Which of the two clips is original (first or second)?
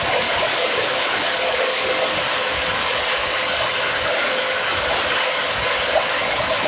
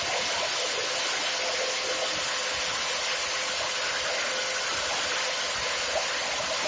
second